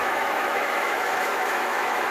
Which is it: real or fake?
fake